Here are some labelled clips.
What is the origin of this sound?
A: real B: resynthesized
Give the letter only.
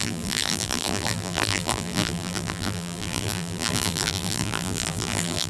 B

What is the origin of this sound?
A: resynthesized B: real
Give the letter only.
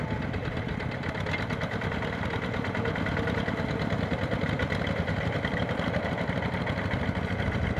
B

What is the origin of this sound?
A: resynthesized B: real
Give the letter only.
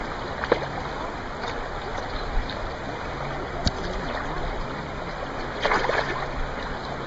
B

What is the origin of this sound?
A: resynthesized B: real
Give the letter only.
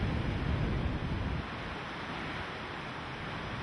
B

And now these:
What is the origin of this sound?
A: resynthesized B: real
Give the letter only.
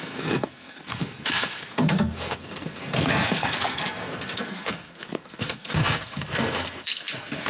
A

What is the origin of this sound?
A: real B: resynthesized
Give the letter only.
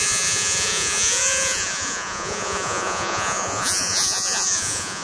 B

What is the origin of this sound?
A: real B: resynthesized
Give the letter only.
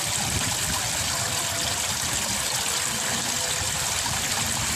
A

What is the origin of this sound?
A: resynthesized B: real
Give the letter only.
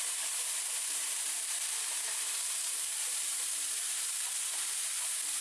A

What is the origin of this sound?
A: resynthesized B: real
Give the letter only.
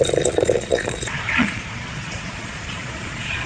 A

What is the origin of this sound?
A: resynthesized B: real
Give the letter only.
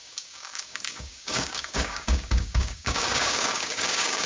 A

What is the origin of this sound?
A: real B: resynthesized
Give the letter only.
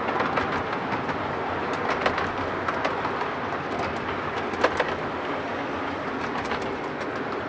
A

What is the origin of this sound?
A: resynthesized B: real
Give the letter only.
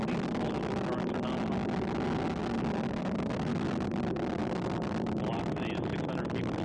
B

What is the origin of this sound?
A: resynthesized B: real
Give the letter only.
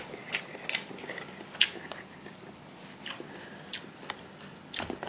B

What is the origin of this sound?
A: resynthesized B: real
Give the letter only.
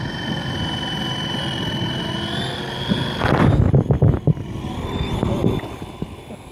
B